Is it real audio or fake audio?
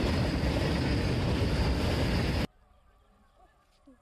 real